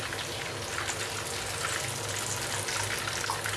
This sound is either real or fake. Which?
real